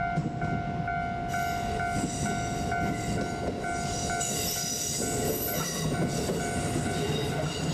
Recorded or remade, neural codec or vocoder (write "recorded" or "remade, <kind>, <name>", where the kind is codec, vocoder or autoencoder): recorded